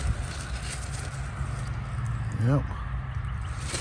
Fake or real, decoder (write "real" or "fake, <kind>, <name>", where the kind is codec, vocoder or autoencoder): real